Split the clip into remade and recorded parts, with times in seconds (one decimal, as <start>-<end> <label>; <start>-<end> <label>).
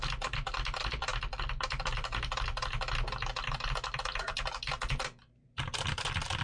0.0-6.4 recorded